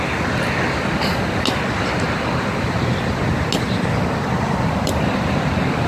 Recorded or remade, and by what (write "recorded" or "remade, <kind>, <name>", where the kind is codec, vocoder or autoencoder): recorded